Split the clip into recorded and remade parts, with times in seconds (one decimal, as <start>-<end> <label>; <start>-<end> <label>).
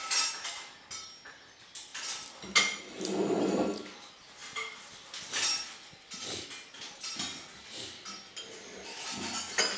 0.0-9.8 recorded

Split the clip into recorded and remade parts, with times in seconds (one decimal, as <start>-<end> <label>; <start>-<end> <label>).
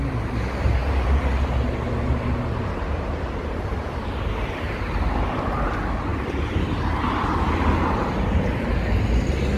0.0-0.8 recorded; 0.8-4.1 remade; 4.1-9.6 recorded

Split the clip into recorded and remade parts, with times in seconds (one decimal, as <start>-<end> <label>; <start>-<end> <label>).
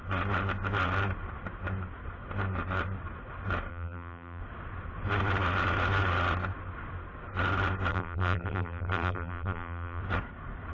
0.0-3.7 recorded; 3.7-4.4 remade; 4.4-7.9 recorded; 7.9-10.0 remade; 10.0-10.7 recorded